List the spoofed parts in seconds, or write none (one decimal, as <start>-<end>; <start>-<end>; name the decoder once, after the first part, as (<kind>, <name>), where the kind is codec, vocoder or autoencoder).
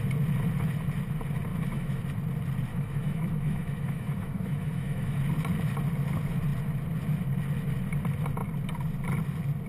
1.5-2.0 (autoencoder, DAC-VAE); 2.7-5.2